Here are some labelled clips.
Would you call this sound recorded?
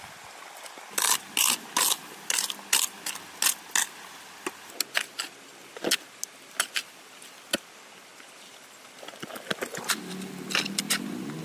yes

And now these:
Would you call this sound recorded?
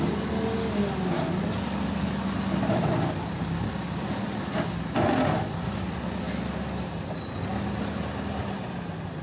yes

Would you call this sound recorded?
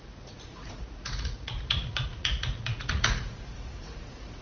no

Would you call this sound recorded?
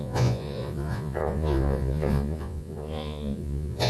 no